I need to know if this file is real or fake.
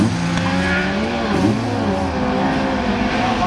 real